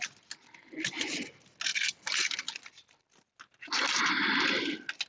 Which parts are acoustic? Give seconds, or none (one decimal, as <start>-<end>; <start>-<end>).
0.0-5.1